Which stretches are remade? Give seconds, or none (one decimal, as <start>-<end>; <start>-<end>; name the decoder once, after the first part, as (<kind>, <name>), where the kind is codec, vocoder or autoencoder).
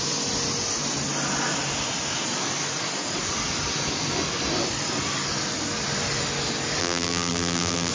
6.8-7.9 (vocoder, BigVGAN v2)